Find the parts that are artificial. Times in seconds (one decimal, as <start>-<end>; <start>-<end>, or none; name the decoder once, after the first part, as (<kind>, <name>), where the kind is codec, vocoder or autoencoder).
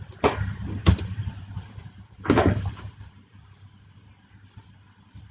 0.8-4.0 (vocoder, BigVGAN v2)